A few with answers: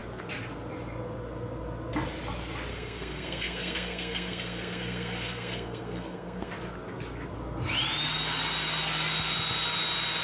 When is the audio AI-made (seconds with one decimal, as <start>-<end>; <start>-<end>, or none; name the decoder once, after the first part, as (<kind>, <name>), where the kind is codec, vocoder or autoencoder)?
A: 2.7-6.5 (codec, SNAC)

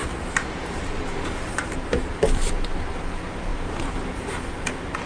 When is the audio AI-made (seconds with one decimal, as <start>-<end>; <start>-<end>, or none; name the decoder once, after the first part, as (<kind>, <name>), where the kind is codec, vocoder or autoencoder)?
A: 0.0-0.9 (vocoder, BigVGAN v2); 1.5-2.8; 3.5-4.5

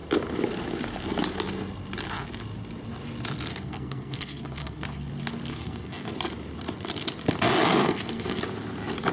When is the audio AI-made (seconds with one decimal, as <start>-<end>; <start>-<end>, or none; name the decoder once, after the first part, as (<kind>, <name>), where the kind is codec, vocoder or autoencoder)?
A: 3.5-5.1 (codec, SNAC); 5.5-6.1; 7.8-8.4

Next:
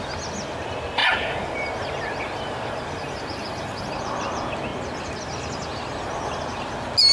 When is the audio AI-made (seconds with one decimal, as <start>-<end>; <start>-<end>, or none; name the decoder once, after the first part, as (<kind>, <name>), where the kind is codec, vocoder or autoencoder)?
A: 1.0-3.8 (vocoder, BigVGAN v2)